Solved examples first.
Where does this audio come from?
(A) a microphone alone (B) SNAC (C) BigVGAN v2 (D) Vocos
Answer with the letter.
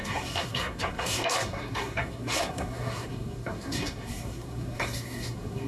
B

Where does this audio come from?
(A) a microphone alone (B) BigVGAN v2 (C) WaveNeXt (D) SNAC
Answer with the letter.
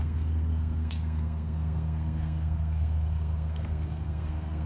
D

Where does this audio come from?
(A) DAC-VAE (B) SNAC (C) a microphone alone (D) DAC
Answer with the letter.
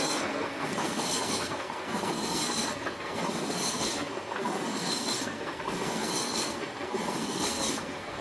B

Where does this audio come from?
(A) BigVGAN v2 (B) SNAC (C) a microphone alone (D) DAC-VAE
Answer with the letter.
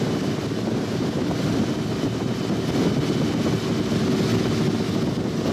C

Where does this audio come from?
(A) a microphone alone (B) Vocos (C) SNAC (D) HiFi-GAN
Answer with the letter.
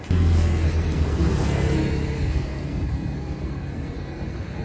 C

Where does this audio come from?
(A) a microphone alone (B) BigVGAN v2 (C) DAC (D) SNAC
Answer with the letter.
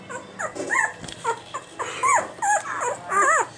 A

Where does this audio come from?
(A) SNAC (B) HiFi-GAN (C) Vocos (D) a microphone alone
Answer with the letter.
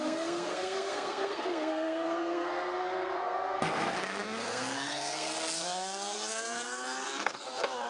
A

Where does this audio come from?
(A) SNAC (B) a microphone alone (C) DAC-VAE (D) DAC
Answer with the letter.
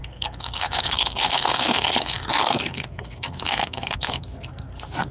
A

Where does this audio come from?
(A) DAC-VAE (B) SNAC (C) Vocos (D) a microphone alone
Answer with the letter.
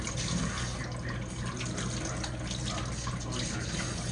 D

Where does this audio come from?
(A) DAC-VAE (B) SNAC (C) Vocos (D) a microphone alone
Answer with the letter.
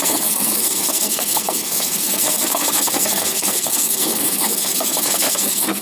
B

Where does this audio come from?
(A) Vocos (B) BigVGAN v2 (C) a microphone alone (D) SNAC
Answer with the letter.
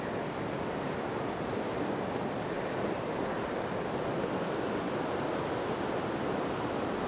C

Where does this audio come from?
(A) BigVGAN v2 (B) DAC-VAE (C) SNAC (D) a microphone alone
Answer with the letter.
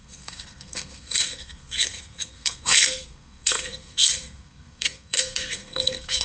C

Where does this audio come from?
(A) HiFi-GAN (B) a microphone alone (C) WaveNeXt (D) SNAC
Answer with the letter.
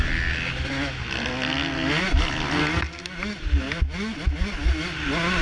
B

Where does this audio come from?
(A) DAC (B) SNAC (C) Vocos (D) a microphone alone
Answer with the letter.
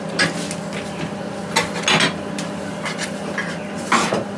D